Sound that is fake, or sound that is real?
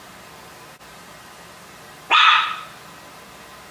real